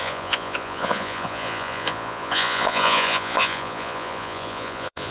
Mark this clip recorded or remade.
remade